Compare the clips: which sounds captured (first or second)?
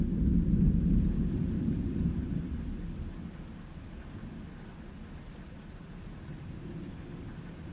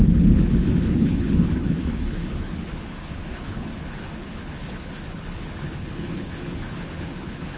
first